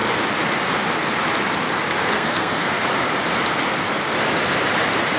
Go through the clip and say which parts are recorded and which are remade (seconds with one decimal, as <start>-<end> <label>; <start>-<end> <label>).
0.0-2.0 recorded; 2.0-2.8 remade; 2.8-5.2 recorded